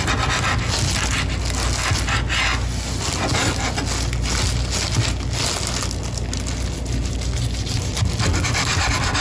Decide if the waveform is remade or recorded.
recorded